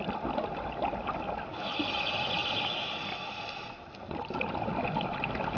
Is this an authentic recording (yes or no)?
yes